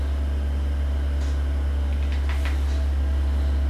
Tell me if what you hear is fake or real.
real